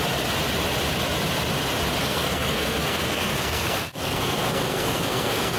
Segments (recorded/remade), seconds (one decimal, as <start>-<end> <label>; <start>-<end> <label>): 0.0-2.0 recorded; 2.0-5.6 remade

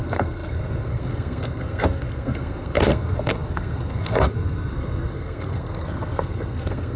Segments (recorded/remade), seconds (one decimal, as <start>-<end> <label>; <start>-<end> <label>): 0.0-7.0 remade

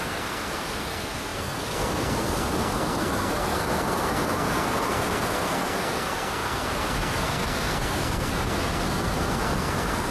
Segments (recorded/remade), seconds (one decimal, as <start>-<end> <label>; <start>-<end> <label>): 0.0-10.1 remade

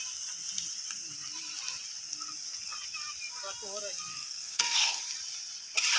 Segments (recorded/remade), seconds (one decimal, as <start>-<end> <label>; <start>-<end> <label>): 0.0-4.1 recorded; 4.1-5.0 remade; 5.0-6.0 recorded

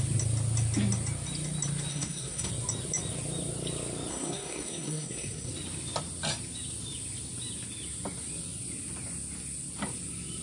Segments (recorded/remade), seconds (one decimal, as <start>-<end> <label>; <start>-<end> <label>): 0.0-1.9 recorded; 1.9-2.5 remade; 2.5-4.1 recorded; 4.1-5.5 remade; 5.5-10.4 recorded